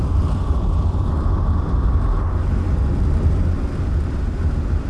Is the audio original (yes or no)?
yes